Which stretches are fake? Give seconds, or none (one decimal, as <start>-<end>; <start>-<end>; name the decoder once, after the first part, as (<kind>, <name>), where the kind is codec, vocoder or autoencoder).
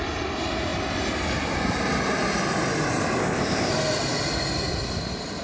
3.2-3.7 (codec, ZipCodec)